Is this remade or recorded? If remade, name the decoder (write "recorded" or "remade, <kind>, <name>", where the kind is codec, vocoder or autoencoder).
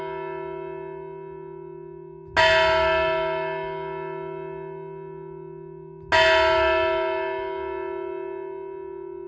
recorded